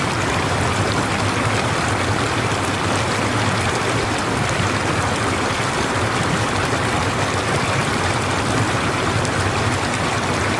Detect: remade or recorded remade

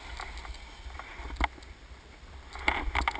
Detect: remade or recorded recorded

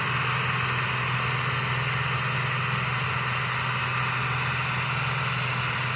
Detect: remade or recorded recorded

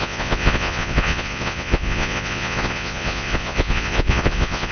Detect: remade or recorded remade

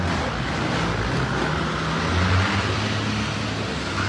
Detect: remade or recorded recorded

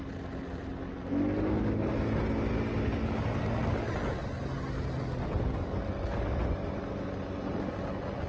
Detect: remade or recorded recorded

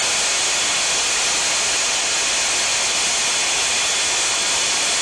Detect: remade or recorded recorded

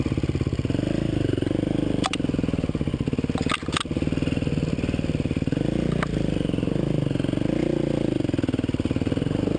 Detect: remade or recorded recorded